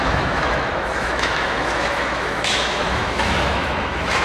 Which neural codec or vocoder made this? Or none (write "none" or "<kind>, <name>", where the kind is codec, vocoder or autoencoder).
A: autoencoder, DAC-VAE